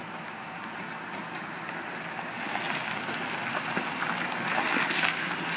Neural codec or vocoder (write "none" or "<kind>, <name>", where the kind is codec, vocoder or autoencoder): none